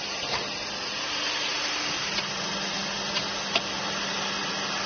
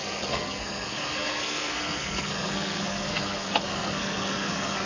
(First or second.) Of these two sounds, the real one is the first